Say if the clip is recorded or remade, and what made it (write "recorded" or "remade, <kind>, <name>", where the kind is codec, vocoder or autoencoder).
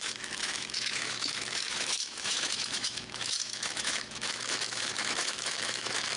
remade, autoencoder, DAC-VAE